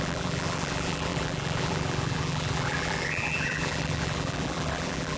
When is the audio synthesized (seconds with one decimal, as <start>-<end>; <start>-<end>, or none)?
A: 0.0-5.2

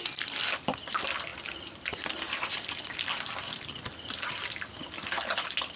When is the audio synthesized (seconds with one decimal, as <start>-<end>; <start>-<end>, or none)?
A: 1.3-4.8

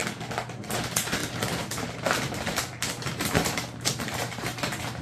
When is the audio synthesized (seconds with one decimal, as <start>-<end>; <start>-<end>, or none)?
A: 0.6-5.0

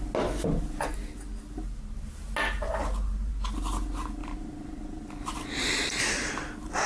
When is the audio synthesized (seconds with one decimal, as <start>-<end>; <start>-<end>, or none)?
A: 2.8-3.3; 4.2-6.0

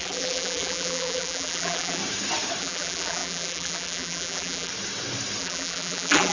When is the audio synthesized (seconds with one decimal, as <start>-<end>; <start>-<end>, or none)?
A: 0.0-2.0; 2.6-4.7; 5.4-6.3